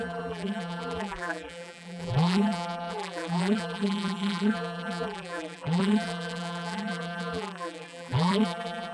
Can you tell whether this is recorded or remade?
remade